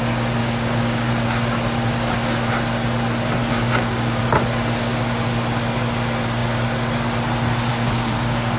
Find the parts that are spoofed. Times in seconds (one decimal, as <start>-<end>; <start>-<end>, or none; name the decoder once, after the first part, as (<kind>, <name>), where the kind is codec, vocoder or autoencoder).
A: 0.4-1.1 (codec, DAC); 3.4-4.2; 7.7-8.6